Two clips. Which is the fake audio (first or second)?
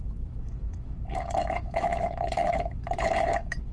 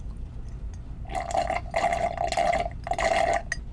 first